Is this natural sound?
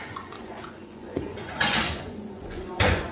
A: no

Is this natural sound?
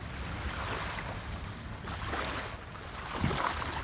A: yes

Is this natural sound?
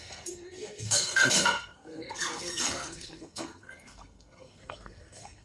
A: no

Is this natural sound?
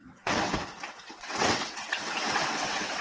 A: no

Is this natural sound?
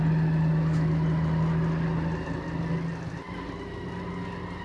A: yes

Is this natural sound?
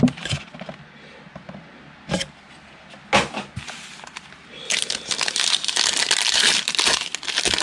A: yes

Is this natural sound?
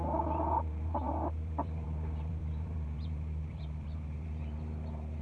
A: no